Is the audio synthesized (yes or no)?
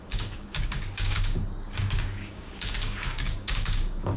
yes